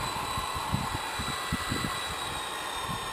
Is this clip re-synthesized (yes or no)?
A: no